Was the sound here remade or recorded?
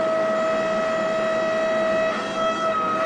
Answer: recorded